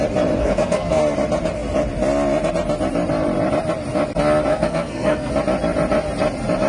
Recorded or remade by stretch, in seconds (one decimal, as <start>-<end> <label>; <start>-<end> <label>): 0.0-0.4 recorded; 0.4-1.0 remade; 1.0-4.5 recorded; 4.5-5.3 remade; 5.3-6.7 recorded